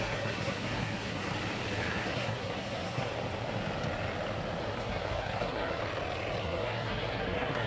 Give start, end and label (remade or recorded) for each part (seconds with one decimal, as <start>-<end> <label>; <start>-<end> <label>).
0.0-1.3 remade; 1.3-1.9 recorded; 1.9-3.1 remade; 3.1-4.6 recorded; 4.6-5.8 remade; 5.8-6.4 recorded; 6.4-7.7 remade